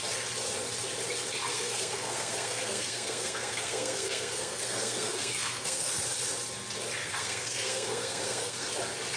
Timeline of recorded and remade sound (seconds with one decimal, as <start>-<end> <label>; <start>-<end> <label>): 0.0-1.5 recorded; 1.5-6.0 remade; 6.0-7.0 recorded; 7.0-8.7 remade; 8.7-9.2 recorded